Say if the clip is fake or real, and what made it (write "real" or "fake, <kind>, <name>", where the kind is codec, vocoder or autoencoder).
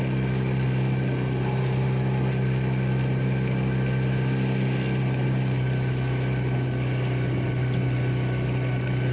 real